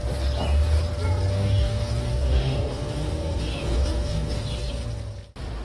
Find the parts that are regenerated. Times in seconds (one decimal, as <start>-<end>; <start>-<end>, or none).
1.3-4.7